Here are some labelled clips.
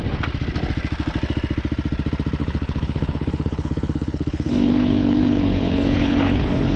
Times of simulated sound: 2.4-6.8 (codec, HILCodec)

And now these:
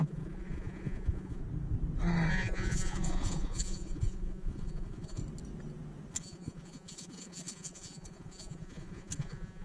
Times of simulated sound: 0.0-1.4 (vocoder, Vocos); 2.3-5.2; 6.1-9.6

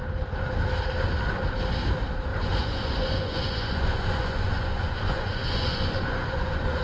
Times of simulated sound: 2.3-6.8 (vocoder, Vocos)

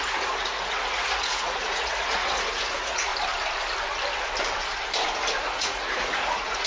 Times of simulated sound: 0.0-3.1 (vocoder, Vocos); 5.4-6.7

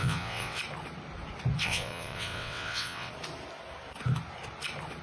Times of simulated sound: 0.0-0.6 (vocoder, WaveNeXt); 1.6-3.1

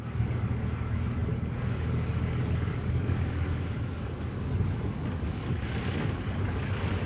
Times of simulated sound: 0.0-7.1 (codec, DAC)

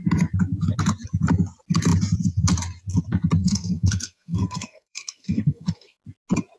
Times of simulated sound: 3.4-6.0 (codec, SNAC)

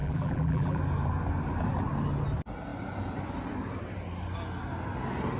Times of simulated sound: 0.0-0.8 (vocoder, BigVGAN v2)